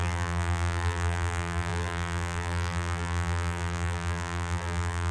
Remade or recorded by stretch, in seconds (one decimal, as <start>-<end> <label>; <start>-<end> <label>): 0.0-5.1 remade